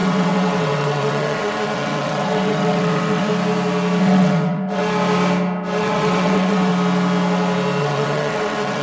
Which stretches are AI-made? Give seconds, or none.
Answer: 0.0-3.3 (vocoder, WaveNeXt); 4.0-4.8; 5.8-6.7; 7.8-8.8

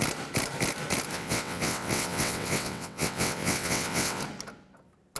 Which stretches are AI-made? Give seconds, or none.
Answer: 1.1-4.2 (vocoder, WaveNeXt)